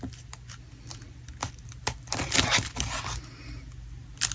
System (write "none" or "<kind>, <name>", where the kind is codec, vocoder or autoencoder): none